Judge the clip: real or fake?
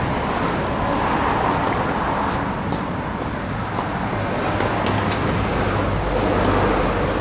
real